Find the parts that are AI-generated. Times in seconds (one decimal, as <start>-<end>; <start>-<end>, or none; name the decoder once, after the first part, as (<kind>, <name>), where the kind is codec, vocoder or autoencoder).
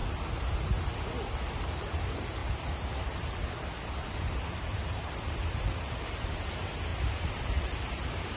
1.9-2.4 (vocoder, BigVGAN v2); 3.9-8.4